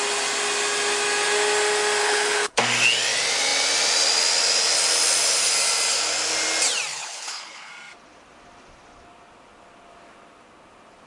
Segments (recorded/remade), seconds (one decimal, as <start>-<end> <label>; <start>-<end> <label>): 0.0-2.0 recorded; 2.0-2.6 remade; 2.6-6.9 recorded; 6.9-7.7 remade; 7.7-11.1 recorded